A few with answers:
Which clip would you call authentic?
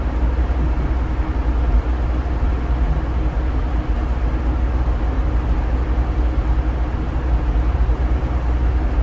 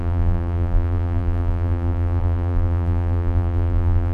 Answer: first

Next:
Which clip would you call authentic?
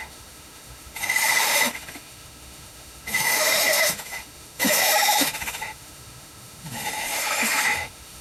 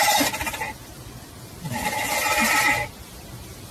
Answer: second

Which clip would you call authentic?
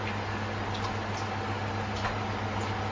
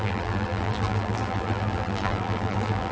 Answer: first